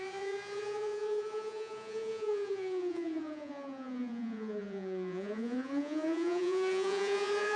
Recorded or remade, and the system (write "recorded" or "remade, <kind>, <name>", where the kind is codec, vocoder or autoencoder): remade, vocoder, Vocos